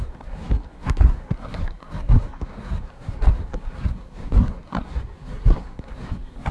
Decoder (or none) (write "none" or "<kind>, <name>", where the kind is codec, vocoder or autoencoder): codec, SNAC